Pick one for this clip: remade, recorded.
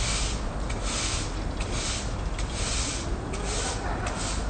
recorded